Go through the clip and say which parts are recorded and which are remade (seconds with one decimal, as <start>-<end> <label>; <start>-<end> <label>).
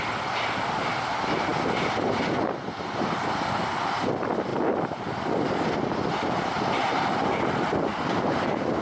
0.0-8.8 recorded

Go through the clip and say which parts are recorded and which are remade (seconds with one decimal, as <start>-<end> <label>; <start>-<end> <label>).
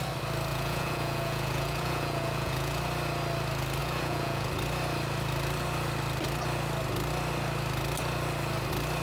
0.0-0.5 recorded; 0.5-2.8 remade; 2.8-3.8 recorded; 3.8-4.5 remade; 4.5-9.0 recorded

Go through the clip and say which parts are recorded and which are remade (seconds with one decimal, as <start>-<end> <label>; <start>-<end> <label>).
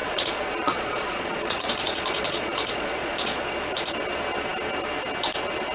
0.0-3.4 remade; 3.4-5.7 recorded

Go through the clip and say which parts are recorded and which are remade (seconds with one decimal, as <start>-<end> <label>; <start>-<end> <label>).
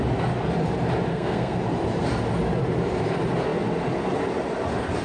0.0-1.1 recorded; 1.1-1.6 remade; 1.6-5.0 recorded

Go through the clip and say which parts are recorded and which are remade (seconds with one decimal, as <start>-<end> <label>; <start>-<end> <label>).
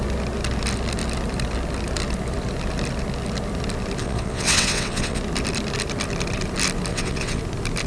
0.0-4.0 recorded; 4.0-5.2 remade; 5.2-6.9 recorded; 6.9-7.4 remade; 7.4-7.9 recorded